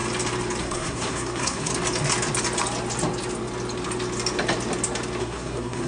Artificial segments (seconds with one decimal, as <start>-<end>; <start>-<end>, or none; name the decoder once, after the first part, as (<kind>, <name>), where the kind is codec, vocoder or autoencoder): 0.6-1.7 (codec, SNAC); 5.2-5.9